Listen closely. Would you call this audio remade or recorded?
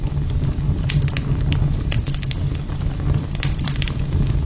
recorded